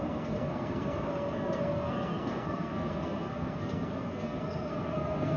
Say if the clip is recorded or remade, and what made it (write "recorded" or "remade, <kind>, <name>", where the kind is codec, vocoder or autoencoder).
remade, codec, SNAC